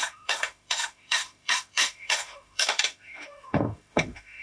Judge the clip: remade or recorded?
remade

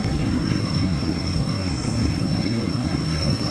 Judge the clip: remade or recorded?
remade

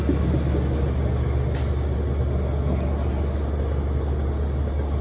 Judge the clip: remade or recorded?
recorded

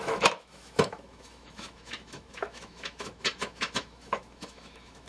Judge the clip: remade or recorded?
remade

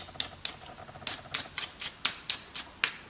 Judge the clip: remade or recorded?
recorded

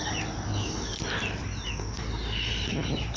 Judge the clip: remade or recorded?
recorded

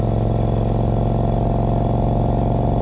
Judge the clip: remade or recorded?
recorded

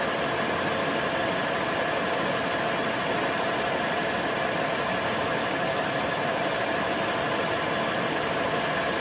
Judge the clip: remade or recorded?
recorded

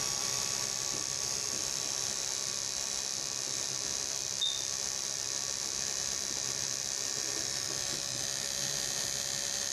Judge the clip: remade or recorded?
recorded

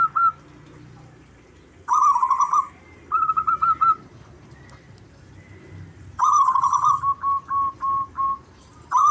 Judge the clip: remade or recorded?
recorded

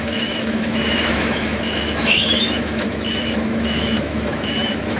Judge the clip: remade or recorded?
remade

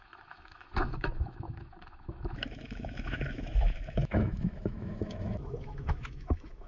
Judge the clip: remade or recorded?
remade